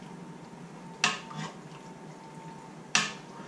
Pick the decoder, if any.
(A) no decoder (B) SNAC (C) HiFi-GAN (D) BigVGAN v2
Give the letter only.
A